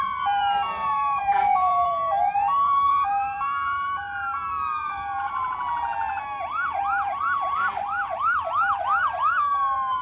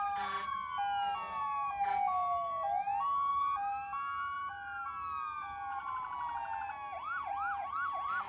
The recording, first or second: second